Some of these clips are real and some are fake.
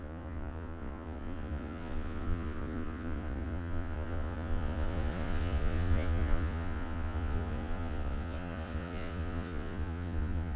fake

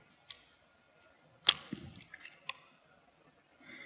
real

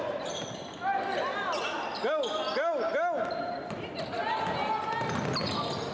real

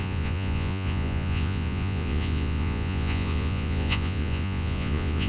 fake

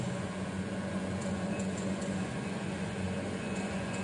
fake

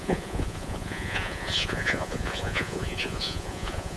fake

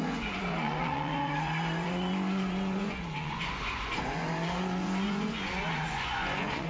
fake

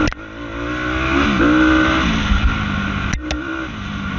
real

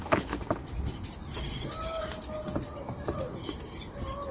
real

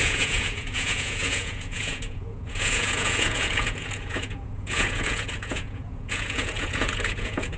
fake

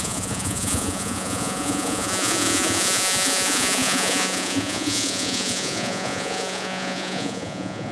fake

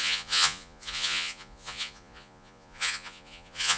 fake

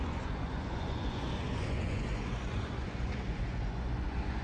fake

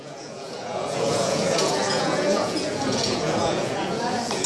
fake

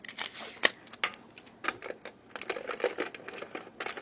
real